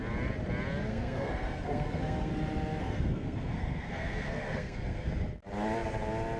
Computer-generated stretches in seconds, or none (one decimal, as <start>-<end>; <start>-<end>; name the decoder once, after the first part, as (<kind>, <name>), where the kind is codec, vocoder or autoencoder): 0.9-2.3 (codec, SNAC); 2.8-5.1